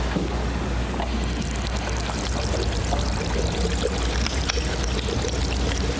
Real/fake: real